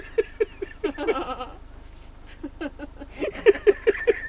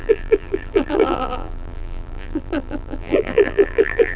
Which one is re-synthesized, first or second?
second